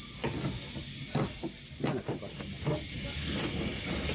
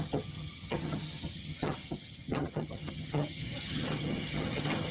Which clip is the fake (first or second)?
second